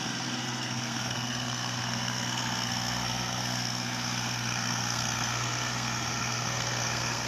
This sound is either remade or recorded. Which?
remade